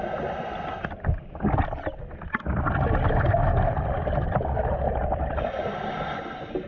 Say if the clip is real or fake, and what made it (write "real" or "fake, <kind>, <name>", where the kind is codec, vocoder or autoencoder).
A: real